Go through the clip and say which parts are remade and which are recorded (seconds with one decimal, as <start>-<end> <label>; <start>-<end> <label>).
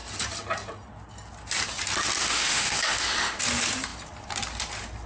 0.0-2.2 recorded; 2.2-3.4 remade; 3.4-5.1 recorded